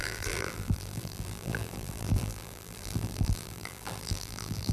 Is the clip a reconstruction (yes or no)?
yes